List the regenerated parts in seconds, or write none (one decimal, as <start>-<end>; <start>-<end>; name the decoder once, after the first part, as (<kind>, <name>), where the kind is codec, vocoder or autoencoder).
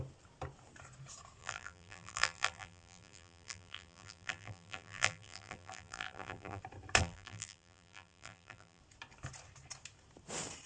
1.4-6.6 (vocoder, BigVGAN v2); 7.0-8.8